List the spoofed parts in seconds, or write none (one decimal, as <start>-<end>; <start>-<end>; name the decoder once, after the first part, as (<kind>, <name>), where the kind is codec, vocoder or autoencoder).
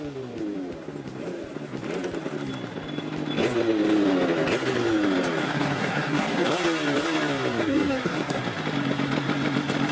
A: 5.4-6.6 (codec, SNAC); 7.6-8.4